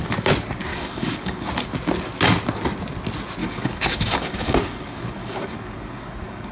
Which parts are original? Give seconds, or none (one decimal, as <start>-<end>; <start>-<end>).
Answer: 0.0-0.7; 1.5-3.4